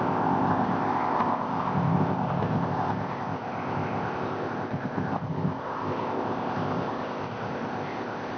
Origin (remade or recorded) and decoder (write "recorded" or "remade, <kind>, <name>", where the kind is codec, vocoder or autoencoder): remade, codec, ZipCodec